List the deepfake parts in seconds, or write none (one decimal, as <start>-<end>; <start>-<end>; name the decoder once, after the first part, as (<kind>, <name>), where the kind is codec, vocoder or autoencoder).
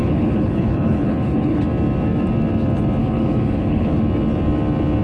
0.0-1.6 (codec, HILCodec); 3.0-4.0